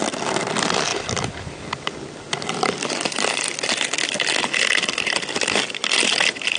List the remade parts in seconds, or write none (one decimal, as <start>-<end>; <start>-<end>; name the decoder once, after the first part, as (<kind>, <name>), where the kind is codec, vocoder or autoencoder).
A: none